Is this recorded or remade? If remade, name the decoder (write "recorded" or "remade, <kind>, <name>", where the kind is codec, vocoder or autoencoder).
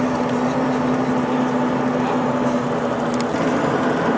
recorded